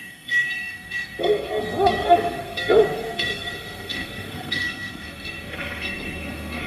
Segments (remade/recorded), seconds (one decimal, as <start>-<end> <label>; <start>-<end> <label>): 0.0-6.7 remade